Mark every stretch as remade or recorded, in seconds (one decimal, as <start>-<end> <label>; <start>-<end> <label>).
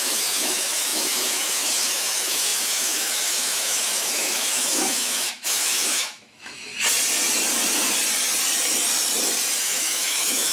0.0-6.7 remade; 6.7-9.6 recorded; 9.6-10.5 remade